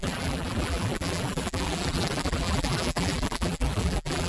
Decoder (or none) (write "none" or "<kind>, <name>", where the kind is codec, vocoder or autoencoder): vocoder, BigVGAN v2